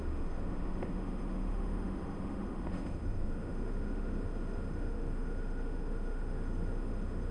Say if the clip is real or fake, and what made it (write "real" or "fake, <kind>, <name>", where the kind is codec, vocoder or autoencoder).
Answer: fake, autoencoder, DAC-VAE